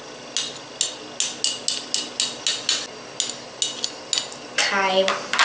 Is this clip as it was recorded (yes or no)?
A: yes